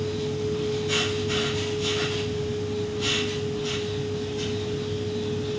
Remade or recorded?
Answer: recorded